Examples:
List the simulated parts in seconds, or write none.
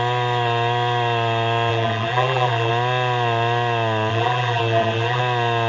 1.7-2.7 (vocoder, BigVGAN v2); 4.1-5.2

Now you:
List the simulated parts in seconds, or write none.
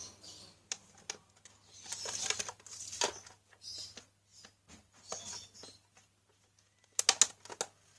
none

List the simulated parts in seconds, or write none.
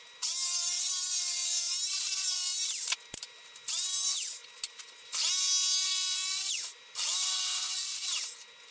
none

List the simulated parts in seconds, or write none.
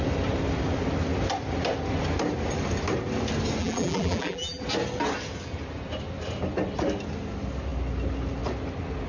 3.6-4.6 (vocoder, BigVGAN v2)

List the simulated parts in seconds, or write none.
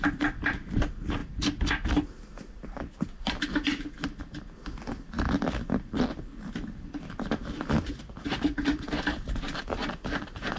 0.0-10.6 (vocoder, BigVGAN v2)